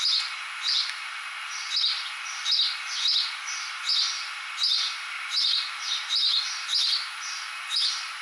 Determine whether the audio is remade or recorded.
recorded